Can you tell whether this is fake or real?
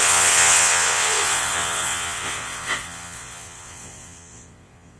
fake